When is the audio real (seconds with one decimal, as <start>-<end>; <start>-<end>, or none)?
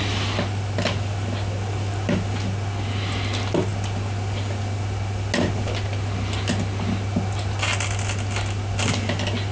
0.0-9.5